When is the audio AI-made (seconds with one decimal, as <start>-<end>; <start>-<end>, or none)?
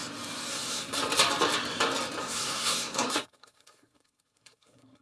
0.5-1.0; 2.2-5.0